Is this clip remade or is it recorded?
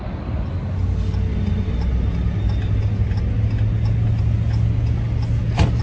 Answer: recorded